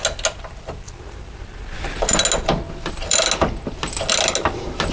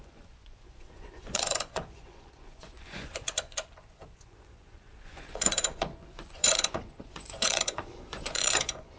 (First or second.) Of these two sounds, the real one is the first